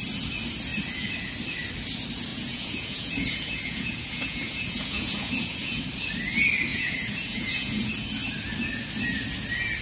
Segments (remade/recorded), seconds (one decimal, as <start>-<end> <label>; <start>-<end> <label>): 0.0-2.3 recorded; 2.3-5.8 remade; 5.8-6.7 recorded; 6.7-7.9 remade; 7.9-9.8 recorded